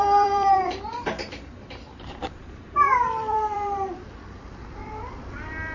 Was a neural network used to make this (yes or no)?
yes